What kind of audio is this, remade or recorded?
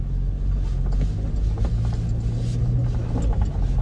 recorded